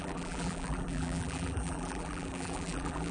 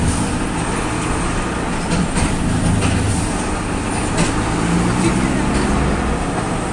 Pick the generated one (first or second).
first